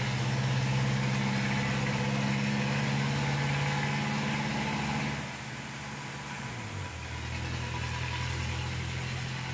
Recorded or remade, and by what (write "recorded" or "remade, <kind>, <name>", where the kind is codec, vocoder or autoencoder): recorded